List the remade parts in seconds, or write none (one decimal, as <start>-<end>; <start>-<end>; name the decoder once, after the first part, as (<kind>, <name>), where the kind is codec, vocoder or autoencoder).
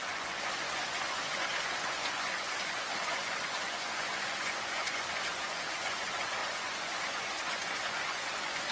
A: 0.0-8.7 (vocoder, Vocos)